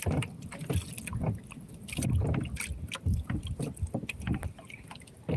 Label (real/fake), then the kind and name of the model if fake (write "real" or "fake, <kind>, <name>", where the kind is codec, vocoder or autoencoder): real